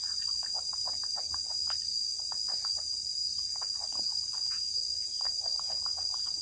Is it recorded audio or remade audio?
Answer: recorded